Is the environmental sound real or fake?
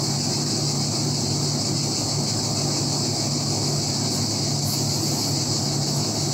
real